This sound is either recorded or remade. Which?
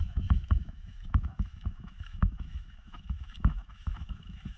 remade